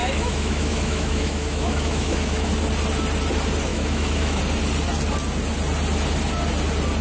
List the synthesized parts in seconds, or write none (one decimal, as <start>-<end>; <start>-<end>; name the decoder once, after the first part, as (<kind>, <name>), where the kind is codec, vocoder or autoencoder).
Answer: 0.0-2.5 (autoencoder, DAC-VAE); 3.7-4.4